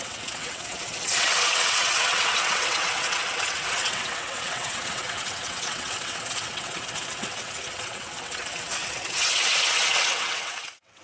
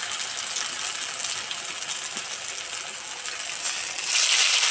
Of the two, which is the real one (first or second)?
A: second